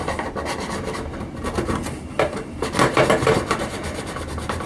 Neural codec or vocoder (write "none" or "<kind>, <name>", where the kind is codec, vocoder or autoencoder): vocoder, BigVGAN v2